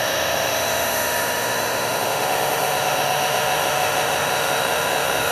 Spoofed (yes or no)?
yes